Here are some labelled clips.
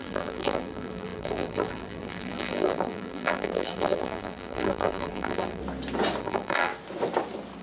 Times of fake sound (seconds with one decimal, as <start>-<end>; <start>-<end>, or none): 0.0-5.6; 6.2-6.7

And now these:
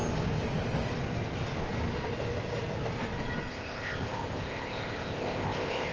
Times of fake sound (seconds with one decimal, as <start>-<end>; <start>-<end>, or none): 3.5-5.9

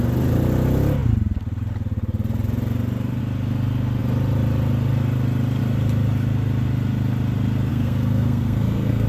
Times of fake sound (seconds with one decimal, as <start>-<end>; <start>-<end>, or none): 7.7-9.1